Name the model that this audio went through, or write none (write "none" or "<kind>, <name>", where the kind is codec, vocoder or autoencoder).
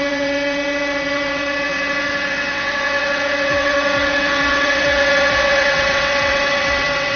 vocoder, WaveNeXt